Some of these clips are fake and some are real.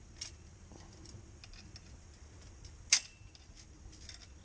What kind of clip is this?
real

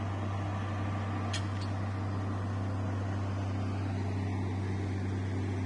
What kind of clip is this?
real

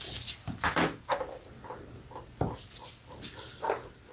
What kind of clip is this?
real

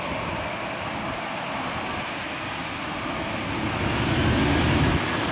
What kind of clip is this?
real